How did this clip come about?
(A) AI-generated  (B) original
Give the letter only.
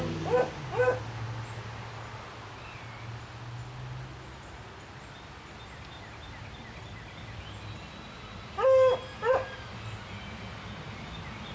B